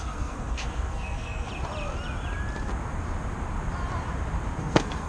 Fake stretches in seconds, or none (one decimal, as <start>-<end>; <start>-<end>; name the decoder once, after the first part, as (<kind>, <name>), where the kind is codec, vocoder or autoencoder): 0.0-1.5 (codec, SNAC); 4.6-5.1